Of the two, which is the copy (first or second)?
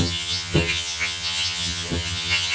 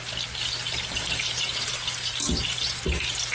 first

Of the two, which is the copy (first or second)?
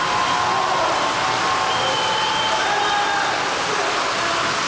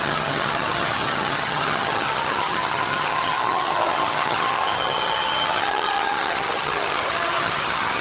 second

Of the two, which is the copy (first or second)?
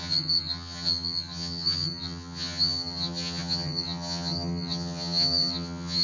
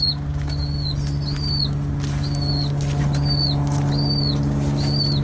first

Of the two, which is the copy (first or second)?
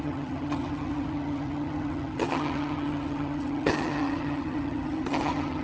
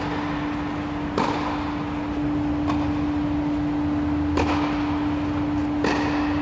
first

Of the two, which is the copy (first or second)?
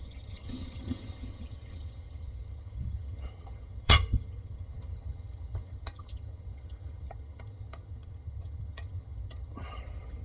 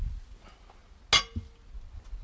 first